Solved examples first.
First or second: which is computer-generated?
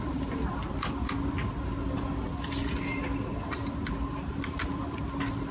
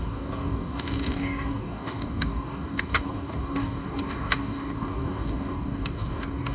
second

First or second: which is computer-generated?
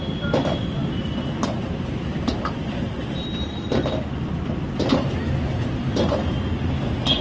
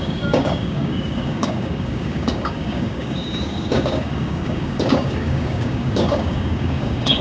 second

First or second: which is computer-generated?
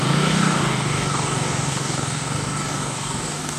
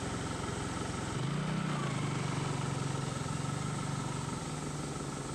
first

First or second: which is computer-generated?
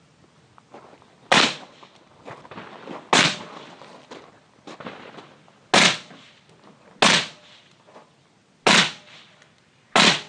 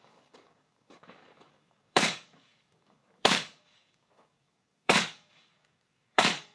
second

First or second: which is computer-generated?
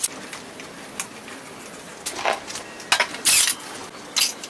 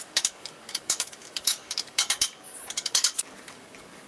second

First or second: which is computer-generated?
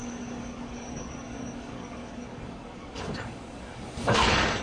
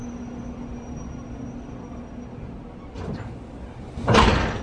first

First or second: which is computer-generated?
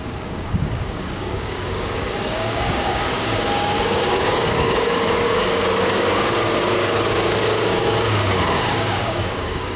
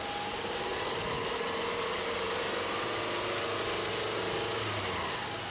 first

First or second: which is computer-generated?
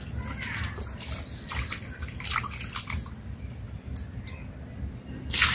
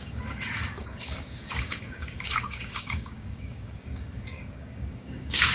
second